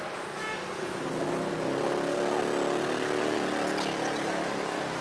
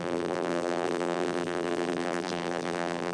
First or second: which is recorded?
first